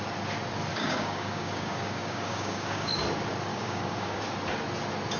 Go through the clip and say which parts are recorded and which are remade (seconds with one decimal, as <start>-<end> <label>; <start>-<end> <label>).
0.0-0.7 recorded; 0.7-3.0 remade; 3.0-3.5 recorded; 3.5-4.2 remade; 4.2-5.2 recorded

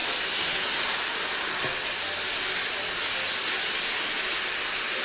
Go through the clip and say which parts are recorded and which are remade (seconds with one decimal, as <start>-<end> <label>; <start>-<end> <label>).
0.0-5.0 recorded

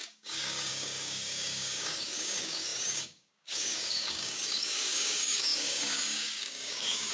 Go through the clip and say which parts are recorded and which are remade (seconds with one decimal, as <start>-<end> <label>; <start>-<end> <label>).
0.0-7.1 remade

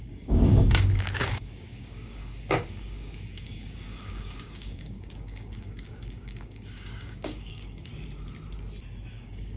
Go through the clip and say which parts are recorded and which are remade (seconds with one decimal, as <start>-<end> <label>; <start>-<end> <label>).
0.0-7.9 remade; 7.9-9.1 recorded; 9.1-9.6 remade

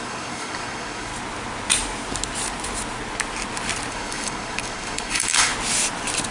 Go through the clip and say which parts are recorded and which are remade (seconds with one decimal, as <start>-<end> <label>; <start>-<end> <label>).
0.0-1.1 remade; 1.1-3.9 recorded; 3.9-5.5 remade; 5.5-6.3 recorded

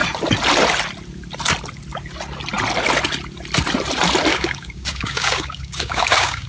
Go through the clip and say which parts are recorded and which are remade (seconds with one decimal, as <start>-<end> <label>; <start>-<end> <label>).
0.0-4.3 recorded; 4.3-6.5 remade

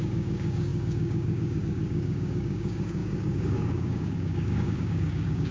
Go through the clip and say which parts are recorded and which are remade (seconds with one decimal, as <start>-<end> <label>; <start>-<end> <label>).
0.0-5.5 remade